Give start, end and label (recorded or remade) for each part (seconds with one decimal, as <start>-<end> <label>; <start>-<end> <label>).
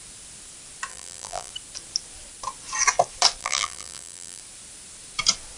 0.0-0.9 recorded; 0.9-1.5 remade; 1.5-3.4 recorded; 3.4-4.4 remade; 4.4-5.6 recorded